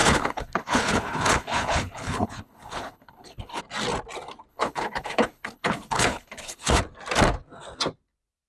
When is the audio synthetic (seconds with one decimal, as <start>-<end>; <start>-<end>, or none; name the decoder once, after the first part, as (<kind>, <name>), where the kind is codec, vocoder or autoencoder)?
0.0-3.6 (codec, HILCodec); 4.5-6.8